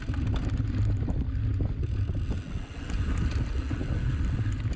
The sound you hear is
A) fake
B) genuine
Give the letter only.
B